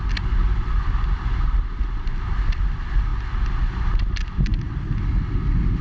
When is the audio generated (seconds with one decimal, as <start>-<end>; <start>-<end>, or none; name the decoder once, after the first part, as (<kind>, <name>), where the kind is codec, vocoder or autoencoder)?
none